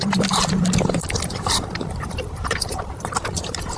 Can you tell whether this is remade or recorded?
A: remade